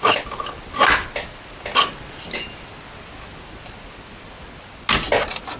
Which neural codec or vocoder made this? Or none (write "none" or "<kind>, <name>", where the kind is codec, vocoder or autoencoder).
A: none